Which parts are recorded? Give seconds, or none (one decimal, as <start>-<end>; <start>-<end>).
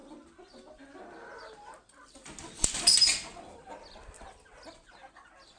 0.0-5.6